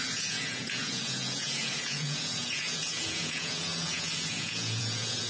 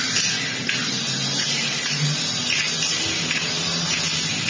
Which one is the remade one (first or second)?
first